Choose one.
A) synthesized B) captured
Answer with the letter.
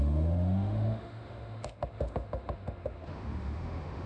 A